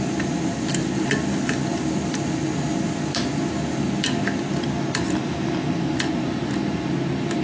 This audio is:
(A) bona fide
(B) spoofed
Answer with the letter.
A